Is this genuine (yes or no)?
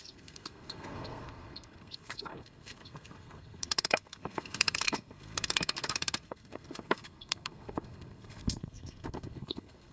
no